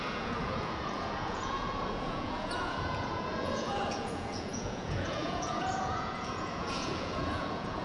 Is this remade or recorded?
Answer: remade